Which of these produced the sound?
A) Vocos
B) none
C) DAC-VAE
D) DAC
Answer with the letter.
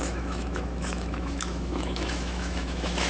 C